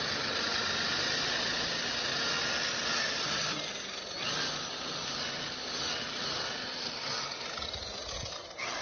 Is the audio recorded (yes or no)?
yes